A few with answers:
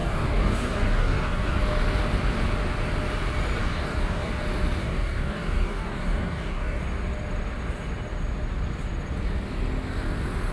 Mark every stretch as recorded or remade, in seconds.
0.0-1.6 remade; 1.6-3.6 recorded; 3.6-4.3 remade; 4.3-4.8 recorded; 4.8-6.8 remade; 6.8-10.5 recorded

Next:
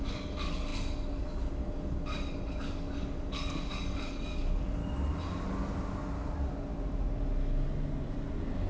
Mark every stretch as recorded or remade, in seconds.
0.0-4.8 remade; 4.8-8.7 recorded

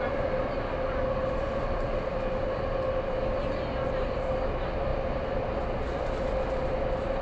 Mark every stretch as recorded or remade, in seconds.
0.0-7.2 recorded